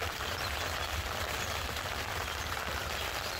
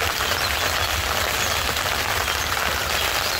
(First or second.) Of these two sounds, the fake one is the first